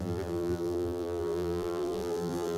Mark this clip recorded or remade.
remade